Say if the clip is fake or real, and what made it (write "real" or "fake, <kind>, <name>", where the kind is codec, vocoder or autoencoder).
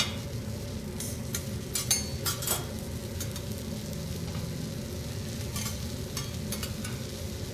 real